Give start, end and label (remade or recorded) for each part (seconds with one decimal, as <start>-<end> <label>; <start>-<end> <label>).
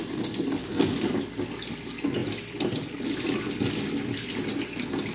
0.0-0.6 recorded; 0.6-1.3 remade; 1.3-5.1 recorded